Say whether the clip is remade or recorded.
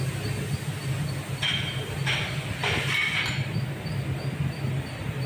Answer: recorded